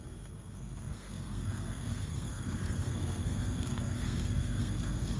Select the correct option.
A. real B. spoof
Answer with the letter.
B